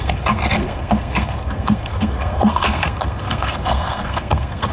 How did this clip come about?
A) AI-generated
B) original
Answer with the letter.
A